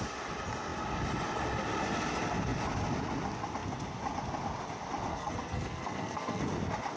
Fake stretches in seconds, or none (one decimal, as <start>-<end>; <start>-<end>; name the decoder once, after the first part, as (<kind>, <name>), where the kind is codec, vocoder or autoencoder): 5.1-6.4 (codec, SNAC)